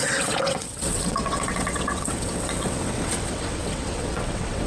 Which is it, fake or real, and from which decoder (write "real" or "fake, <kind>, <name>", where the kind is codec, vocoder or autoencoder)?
fake, vocoder, WaveNeXt